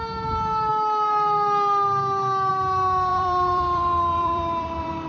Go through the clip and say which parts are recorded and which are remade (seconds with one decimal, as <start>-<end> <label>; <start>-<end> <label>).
0.0-3.1 recorded; 3.1-5.1 remade